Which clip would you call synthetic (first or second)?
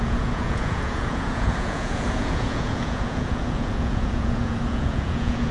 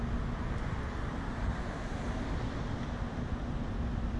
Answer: first